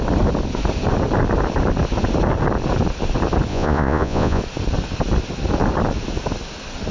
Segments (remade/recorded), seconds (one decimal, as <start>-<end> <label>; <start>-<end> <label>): 0.0-3.5 recorded; 3.5-4.4 remade; 4.4-6.9 recorded